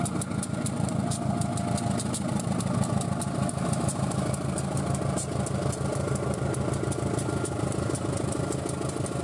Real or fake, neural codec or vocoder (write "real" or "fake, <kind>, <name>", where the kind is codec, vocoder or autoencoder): real